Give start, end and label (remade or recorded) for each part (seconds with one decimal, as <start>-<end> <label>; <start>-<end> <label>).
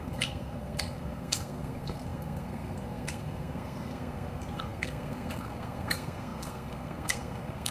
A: 0.0-7.7 remade